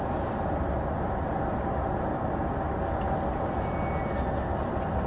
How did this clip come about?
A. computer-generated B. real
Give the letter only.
B